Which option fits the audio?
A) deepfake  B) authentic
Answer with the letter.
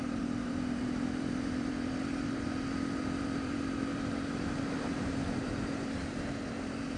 A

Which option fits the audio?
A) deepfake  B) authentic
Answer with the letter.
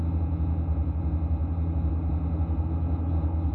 B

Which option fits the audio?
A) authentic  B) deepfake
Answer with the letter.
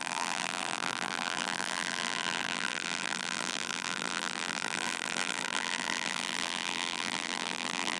B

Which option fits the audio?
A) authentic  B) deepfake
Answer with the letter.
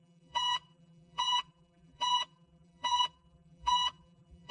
B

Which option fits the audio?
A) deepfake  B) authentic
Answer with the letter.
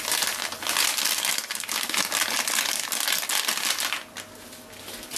B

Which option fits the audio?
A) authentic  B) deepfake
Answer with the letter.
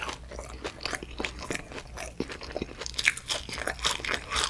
A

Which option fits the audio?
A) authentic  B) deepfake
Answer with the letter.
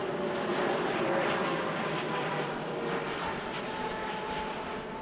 B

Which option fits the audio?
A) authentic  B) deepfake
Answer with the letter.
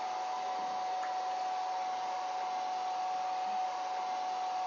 A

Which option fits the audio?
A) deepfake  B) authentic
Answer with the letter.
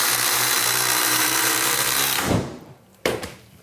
A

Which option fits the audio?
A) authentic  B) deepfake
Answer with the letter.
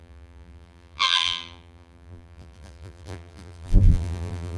B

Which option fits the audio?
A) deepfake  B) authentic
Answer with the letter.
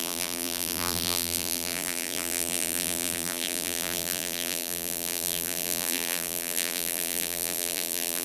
A